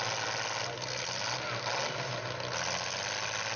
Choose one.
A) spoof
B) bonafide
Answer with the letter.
B